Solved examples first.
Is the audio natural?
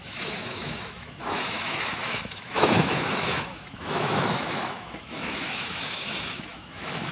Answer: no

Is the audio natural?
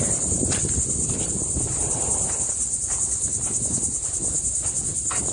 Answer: yes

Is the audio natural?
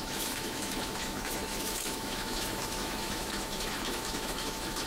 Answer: no